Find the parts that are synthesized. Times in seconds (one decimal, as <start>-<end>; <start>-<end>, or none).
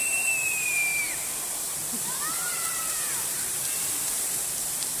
0.0-5.0